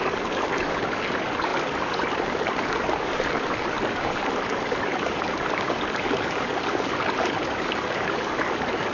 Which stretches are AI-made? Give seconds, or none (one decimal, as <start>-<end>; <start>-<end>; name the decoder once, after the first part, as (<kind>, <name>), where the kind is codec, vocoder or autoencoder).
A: 0.0-8.9 (codec, DAC)